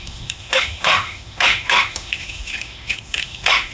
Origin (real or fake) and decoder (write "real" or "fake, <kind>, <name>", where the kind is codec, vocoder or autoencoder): fake, autoencoder, DAC-VAE